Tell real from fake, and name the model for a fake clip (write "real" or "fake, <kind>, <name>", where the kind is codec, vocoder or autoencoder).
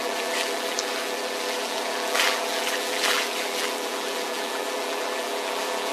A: fake, vocoder, BigVGAN v2